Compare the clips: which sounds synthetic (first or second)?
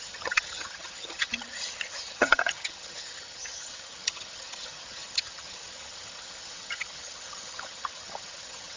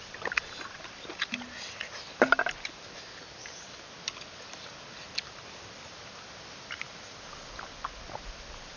first